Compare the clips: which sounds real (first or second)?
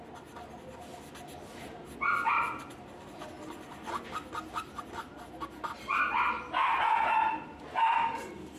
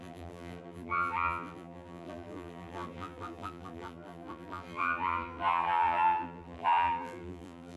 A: first